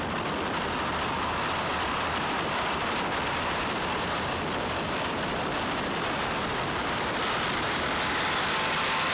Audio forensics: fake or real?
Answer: fake